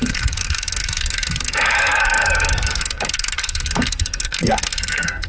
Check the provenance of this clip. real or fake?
fake